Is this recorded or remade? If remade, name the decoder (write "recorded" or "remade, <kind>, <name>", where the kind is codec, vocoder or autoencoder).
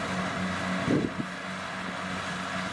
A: recorded